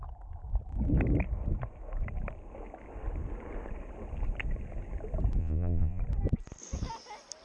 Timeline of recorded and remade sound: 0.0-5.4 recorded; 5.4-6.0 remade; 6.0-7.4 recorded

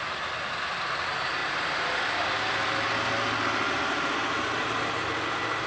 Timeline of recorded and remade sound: 0.0-5.7 recorded